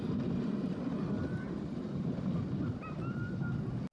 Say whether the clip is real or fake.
real